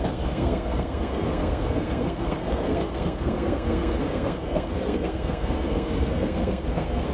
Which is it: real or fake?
fake